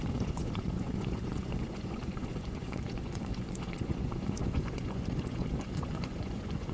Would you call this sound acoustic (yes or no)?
no